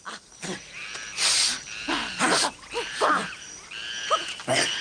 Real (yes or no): yes